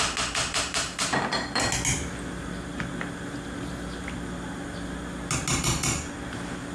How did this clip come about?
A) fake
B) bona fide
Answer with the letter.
B